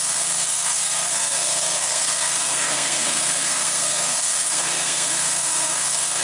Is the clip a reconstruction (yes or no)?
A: yes